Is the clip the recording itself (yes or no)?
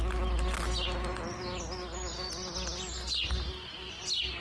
yes